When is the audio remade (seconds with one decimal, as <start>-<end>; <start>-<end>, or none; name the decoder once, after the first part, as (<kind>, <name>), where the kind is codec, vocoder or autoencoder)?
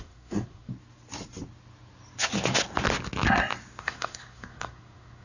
0.0-0.7 (codec, SNAC); 3.8-5.2